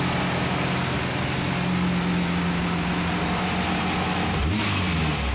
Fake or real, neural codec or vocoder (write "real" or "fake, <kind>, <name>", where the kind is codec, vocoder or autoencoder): real